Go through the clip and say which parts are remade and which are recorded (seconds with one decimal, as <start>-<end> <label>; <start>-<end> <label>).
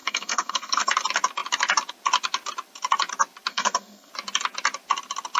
0.0-0.9 remade; 0.9-3.5 recorded; 3.5-4.1 remade; 4.1-5.4 recorded